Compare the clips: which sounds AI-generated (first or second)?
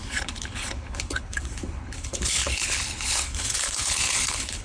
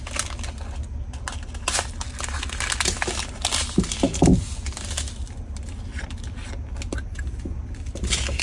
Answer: first